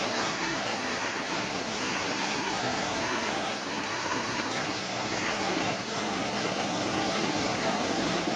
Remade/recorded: remade